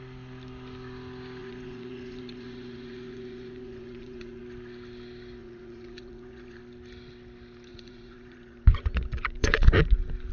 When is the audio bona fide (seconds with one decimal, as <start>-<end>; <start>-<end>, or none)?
0.0-1.4; 4.4-5.4; 6.6-7.7; 9.6-10.3